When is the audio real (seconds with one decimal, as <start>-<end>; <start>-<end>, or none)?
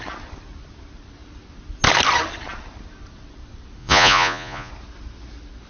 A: 0.0-3.8; 4.7-5.7